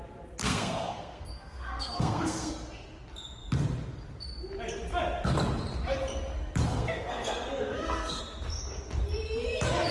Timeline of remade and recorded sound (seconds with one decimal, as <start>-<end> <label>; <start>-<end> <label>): 0.0-0.4 recorded; 0.4-2.5 remade; 2.5-6.7 recorded; 6.7-8.2 remade; 8.2-9.9 recorded